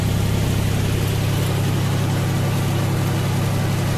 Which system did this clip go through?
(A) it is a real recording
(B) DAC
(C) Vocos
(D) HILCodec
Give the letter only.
A